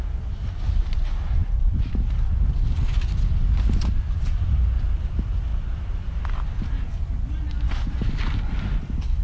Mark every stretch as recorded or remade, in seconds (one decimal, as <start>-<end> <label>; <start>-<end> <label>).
0.0-1.4 recorded; 1.4-1.9 remade; 1.9-9.2 recorded